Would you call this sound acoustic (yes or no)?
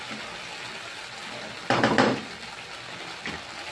yes